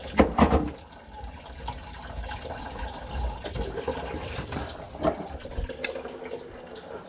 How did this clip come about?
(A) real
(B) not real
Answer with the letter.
A